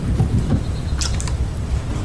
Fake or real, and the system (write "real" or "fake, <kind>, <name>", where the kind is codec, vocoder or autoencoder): real